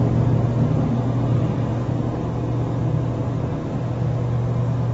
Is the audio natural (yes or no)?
yes